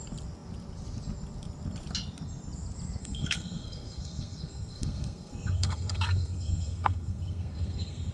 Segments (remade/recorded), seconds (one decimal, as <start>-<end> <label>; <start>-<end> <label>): 0.0-3.0 recorded; 3.0-8.1 remade

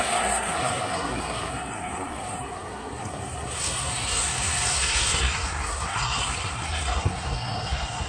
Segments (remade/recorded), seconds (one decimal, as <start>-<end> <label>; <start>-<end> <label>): 0.0-8.1 remade

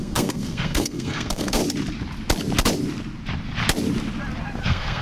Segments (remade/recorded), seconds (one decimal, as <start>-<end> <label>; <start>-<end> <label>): 0.0-1.6 remade; 1.6-4.6 recorded; 4.6-5.0 remade

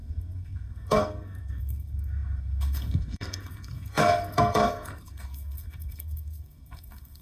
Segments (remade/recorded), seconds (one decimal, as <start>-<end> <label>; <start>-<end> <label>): 0.0-7.2 remade

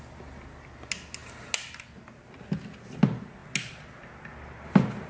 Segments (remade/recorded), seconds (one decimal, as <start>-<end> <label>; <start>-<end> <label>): 0.0-5.1 recorded